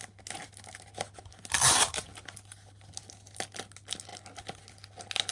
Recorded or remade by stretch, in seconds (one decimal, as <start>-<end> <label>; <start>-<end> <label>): 0.0-5.3 recorded